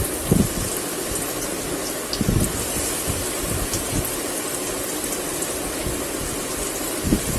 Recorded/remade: recorded